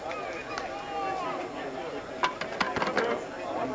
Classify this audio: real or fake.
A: real